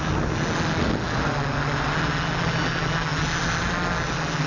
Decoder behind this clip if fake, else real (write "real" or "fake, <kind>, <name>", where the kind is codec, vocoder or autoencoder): real